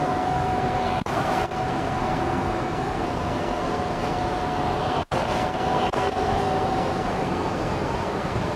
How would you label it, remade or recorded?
remade